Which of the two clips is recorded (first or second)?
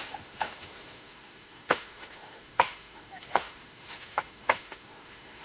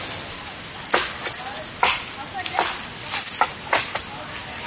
second